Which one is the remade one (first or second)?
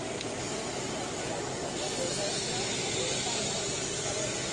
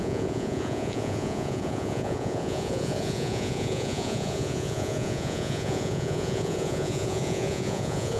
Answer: second